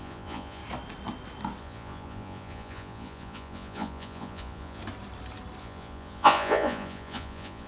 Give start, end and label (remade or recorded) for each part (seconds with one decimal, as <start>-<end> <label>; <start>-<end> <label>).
0.0-0.6 remade; 0.6-1.6 recorded; 1.6-4.8 remade; 4.8-5.6 recorded; 5.6-7.7 remade